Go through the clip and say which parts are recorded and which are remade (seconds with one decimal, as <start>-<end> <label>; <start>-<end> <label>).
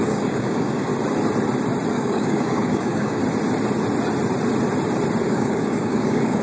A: 0.0-0.9 remade; 0.9-1.9 recorded; 1.9-3.2 remade; 3.2-5.2 recorded; 5.2-6.4 remade